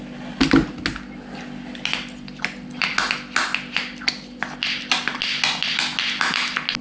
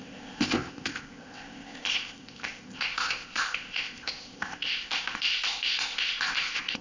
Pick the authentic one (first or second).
first